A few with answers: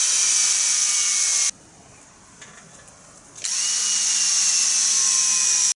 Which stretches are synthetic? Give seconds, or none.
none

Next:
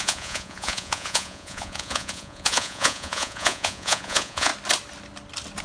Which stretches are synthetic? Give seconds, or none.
0.0-4.5 (vocoder, Vocos)

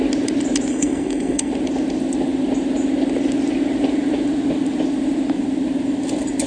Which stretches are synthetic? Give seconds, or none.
0.7-1.5 (codec, SNAC)

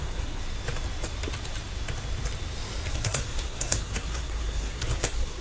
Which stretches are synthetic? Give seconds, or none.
0.0-0.4 (codec, SNAC); 2.9-5.4

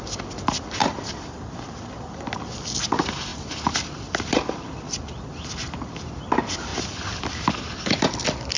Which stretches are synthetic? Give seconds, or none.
none

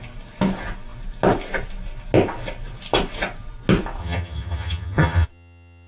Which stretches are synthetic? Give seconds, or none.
4.0-5.9 (vocoder, HiFi-GAN)